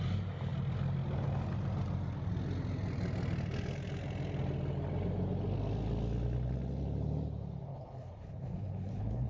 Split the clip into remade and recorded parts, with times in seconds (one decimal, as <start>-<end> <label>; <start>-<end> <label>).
0.0-7.7 recorded; 7.7-9.3 remade

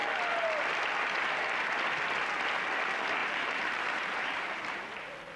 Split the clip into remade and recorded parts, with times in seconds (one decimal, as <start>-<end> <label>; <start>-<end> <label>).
0.0-3.2 recorded; 3.2-5.0 remade; 5.0-5.4 recorded

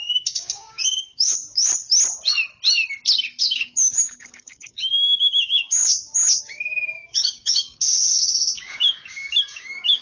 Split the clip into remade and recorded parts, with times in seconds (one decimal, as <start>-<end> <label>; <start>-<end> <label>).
0.0-1.7 remade; 1.7-3.4 recorded; 3.4-5.8 remade; 5.8-6.4 recorded; 6.4-10.0 remade

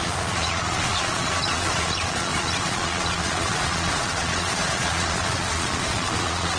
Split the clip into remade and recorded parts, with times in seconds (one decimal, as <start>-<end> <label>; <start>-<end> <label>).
0.0-6.6 remade